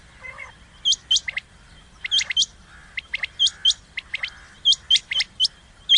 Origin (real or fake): real